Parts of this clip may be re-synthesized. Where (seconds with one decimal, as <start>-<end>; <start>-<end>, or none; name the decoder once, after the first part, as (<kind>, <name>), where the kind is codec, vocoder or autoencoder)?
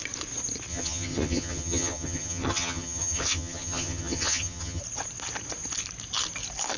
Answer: 0.7-4.8 (vocoder, HiFi-GAN)